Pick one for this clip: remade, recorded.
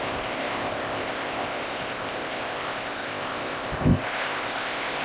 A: remade